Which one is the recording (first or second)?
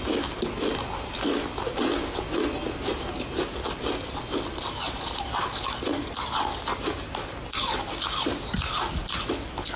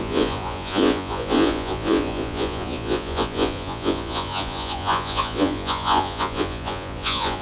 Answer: first